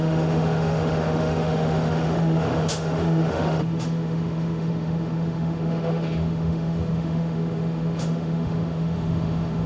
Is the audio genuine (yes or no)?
no